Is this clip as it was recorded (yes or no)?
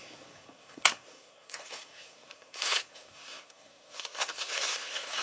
no